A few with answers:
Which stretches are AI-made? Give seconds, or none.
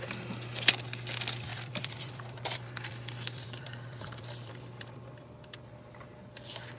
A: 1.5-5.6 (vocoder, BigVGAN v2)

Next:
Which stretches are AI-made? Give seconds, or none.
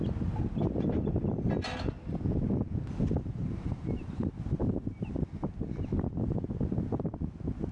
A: 3.4-4.3 (vocoder, BigVGAN v2)